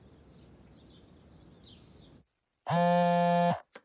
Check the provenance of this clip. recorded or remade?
recorded